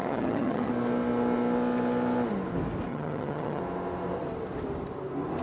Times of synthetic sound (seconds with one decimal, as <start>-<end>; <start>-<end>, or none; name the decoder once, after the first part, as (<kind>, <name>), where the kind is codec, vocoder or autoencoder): 0.0-0.7 (vocoder, HiFi-GAN); 2.9-3.6